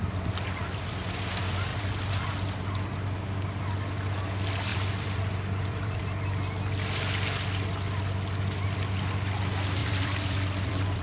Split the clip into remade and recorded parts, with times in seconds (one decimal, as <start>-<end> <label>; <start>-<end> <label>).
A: 0.0-1.7 recorded; 1.7-2.3 remade; 2.3-4.7 recorded; 4.7-6.0 remade; 6.0-9.8 recorded; 9.8-11.0 remade